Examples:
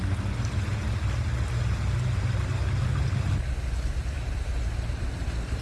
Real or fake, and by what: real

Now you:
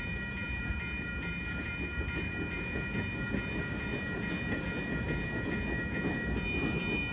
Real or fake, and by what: real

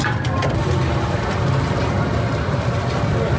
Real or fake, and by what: real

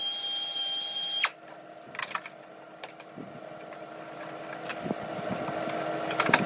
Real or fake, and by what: real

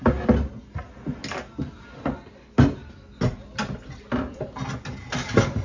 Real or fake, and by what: real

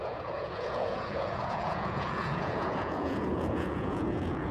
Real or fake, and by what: fake, vocoder, Vocos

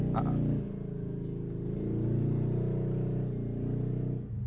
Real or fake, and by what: real